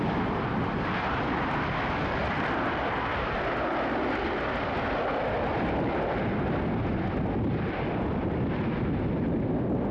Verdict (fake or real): real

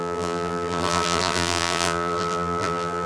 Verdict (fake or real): fake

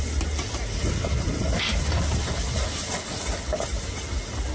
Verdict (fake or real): real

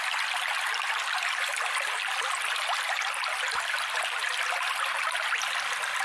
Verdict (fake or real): real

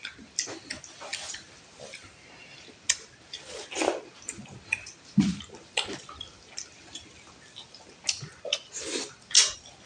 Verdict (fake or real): real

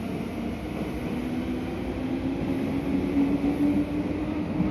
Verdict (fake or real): real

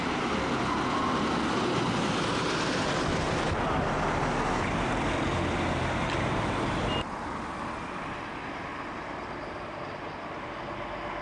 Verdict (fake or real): real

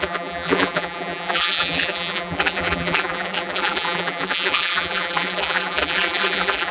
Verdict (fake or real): fake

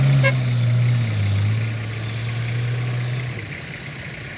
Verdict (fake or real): real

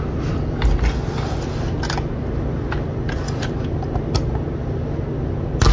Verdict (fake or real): real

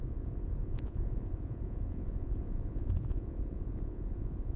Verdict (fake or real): fake